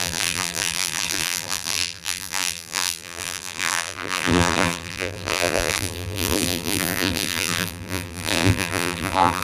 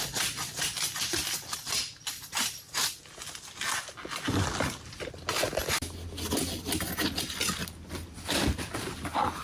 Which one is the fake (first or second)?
first